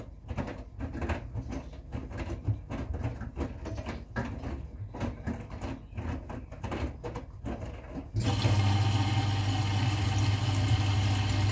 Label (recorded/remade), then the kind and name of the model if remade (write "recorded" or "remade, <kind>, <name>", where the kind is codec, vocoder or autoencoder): recorded